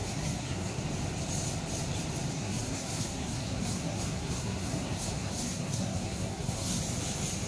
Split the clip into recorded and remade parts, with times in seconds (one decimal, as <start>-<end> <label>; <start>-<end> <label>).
0.0-0.8 remade; 0.8-2.3 recorded; 2.3-6.8 remade; 6.8-7.5 recorded